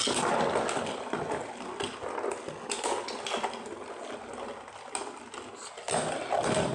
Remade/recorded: recorded